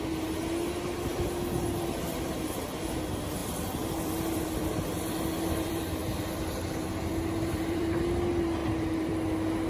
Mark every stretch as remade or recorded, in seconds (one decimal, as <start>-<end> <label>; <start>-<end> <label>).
0.0-3.4 recorded; 3.4-8.0 remade; 8.0-8.6 recorded; 8.6-9.1 remade; 9.1-9.7 recorded